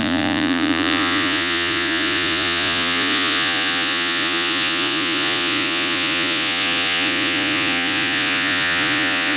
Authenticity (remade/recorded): remade